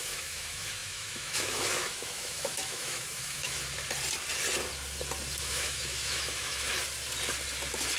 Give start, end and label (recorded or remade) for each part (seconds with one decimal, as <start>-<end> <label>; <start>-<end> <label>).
0.0-3.6 remade; 3.6-5.4 recorded; 5.4-6.7 remade; 6.7-8.0 recorded